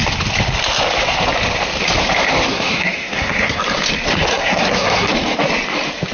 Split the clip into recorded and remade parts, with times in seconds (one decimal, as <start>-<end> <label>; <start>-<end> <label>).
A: 0.0-2.5 recorded; 2.5-3.6 remade; 3.6-4.3 recorded; 4.3-5.1 remade; 5.1-6.1 recorded